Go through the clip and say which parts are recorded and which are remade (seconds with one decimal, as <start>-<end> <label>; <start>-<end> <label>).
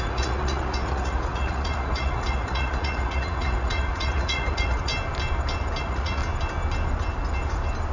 0.0-4.9 remade; 4.9-5.8 recorded; 5.8-6.2 remade; 6.2-7.9 recorded